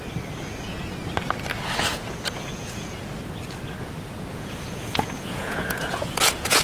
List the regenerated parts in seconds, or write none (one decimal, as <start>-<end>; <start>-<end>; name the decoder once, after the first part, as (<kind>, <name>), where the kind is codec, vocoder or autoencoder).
1.9-3.0 (vocoder, Vocos); 4.3-6.6